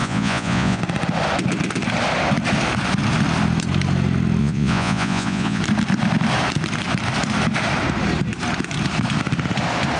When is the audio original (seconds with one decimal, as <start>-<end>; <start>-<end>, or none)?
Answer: 0.8-4.4; 5.6-10.0